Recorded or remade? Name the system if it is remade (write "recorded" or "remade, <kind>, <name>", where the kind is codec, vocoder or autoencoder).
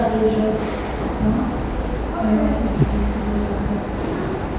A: recorded